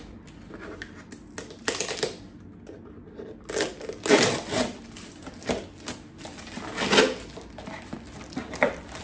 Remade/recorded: recorded